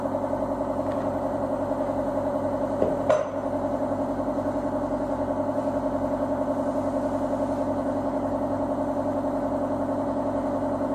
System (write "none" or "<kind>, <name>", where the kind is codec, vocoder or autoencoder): none